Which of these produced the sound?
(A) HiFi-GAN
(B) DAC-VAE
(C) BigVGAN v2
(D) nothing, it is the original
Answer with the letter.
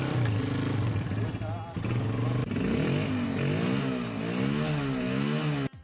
D